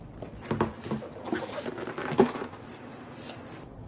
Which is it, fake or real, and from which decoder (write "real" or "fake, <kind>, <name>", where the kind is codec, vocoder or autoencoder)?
real